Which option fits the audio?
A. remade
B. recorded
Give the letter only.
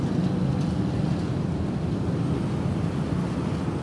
B